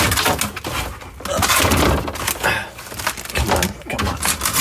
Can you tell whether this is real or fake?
real